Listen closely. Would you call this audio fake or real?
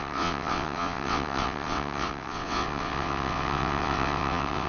fake